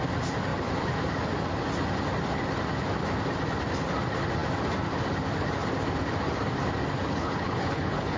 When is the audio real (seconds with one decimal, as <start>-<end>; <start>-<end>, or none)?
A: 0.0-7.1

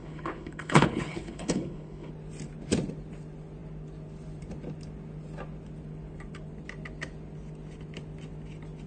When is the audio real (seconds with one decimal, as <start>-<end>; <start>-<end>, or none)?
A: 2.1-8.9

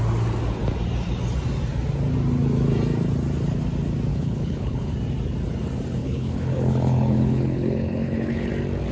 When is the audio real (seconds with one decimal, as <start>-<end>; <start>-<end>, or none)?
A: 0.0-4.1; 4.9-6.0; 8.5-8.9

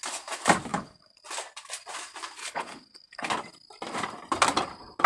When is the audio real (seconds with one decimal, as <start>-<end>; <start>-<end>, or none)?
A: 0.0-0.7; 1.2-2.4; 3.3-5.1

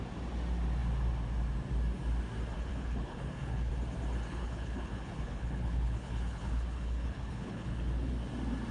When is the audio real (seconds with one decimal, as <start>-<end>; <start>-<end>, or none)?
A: 0.0-2.7; 3.7-4.3; 8.1-8.7

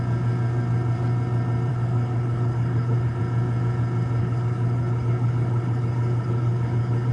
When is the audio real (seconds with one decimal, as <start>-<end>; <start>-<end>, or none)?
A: 0.0-1.7; 3.2-4.2